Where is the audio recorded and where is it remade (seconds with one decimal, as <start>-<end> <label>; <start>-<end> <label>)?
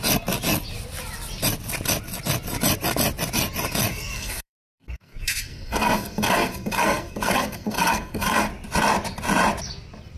0.0-3.9 recorded; 3.9-8.5 remade; 8.5-10.2 recorded